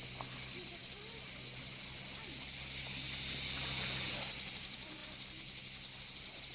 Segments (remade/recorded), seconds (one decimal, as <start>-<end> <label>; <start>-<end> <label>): 0.0-6.5 recorded